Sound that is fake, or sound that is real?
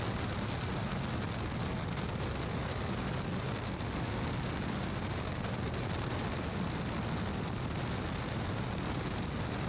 real